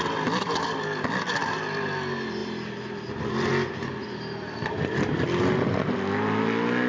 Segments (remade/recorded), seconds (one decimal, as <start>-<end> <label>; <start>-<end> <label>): 0.0-6.9 recorded